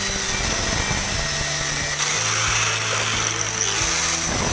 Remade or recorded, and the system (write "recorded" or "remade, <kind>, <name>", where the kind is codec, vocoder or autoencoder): recorded